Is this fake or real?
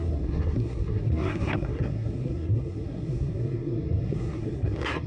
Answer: fake